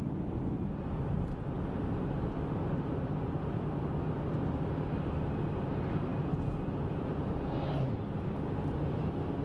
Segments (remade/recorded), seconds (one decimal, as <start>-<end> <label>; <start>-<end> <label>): 0.0-9.4 recorded